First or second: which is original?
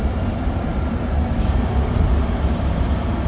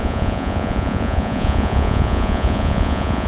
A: first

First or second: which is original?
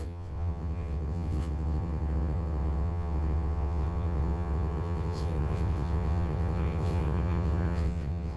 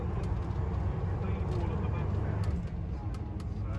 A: second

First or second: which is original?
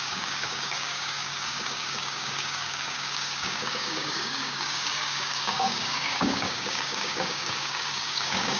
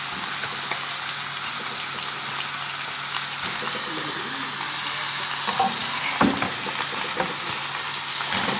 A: second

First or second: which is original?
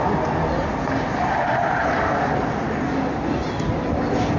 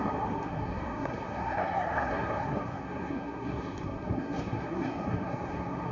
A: first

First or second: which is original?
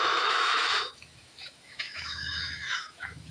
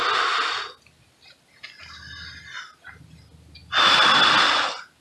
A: second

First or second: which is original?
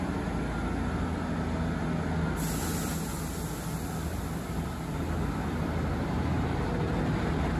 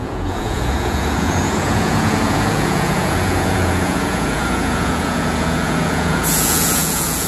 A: first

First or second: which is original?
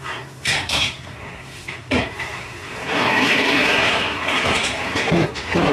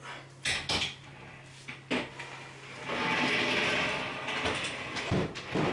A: second